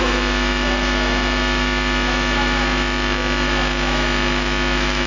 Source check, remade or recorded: remade